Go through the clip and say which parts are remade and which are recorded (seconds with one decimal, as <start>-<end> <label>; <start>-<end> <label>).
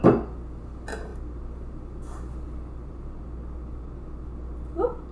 0.0-5.1 recorded